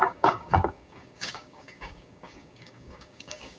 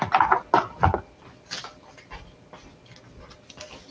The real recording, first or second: second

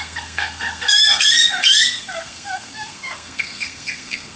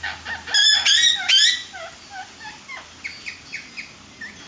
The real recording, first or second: second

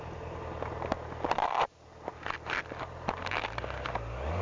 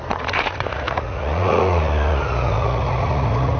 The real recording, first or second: first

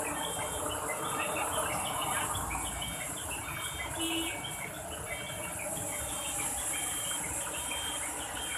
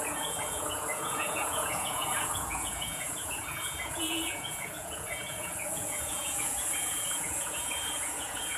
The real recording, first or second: first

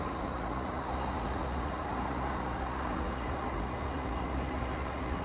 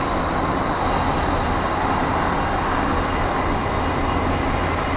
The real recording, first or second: second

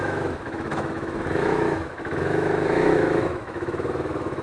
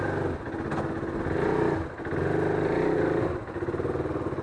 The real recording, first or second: second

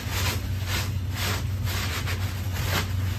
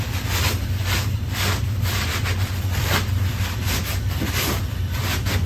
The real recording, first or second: first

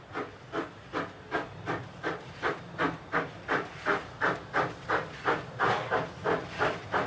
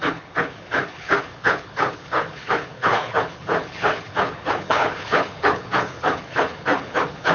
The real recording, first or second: first